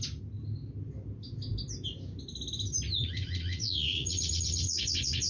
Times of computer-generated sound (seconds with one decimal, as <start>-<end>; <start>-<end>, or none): 3.0-5.3